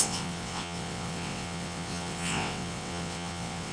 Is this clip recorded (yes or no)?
no